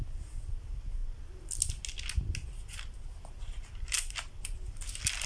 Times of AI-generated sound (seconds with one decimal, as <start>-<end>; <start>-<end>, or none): none